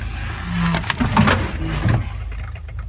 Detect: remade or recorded recorded